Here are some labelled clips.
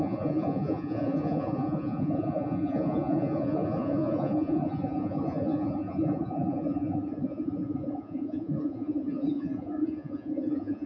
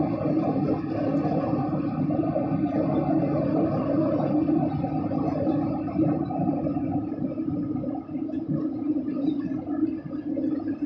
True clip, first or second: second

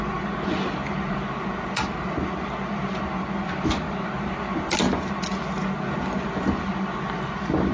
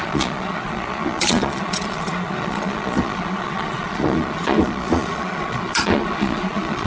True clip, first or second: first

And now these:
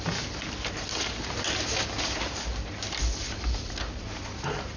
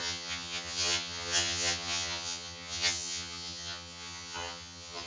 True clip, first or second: first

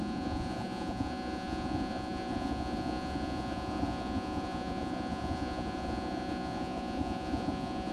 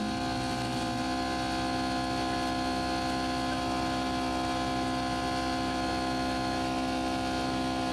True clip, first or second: second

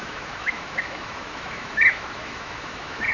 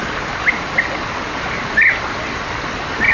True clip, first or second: second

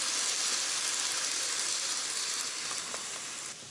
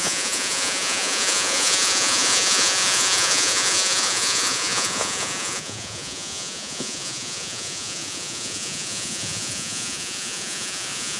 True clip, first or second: first